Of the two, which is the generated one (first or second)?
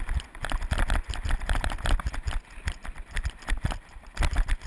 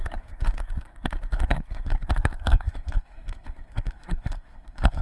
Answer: second